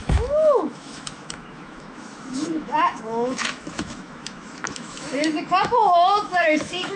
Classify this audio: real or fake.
fake